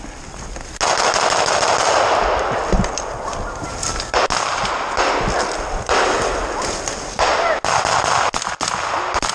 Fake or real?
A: real